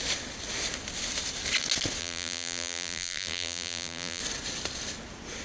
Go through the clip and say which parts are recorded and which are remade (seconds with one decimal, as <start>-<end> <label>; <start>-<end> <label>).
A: 0.0-2.0 recorded; 2.0-4.2 remade; 4.2-5.4 recorded